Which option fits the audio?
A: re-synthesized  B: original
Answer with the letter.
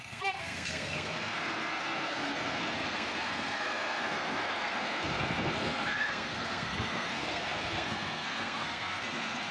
A